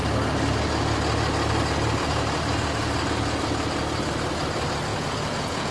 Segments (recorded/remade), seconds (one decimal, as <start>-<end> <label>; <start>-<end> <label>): 0.0-4.9 recorded; 4.9-5.7 remade